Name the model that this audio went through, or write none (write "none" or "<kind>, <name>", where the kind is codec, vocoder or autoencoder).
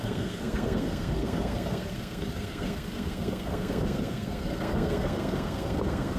codec, SNAC